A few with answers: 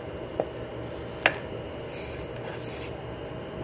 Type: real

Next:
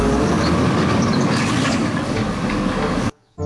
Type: fake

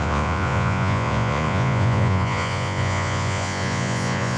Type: fake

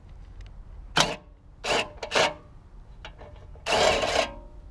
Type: real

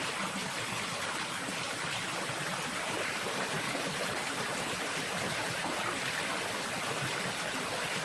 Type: real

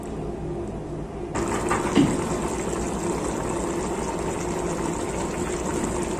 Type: real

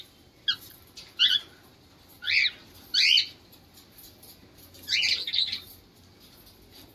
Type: real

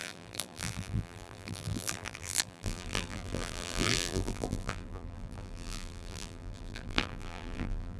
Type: fake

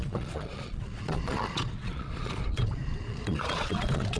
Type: fake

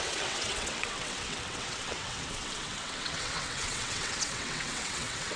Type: fake